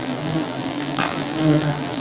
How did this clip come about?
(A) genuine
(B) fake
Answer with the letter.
B